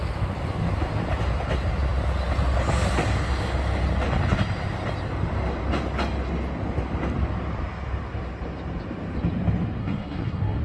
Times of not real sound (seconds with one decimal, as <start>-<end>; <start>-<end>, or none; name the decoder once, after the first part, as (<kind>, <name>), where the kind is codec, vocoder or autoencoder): 9.8-10.6 (codec, SNAC)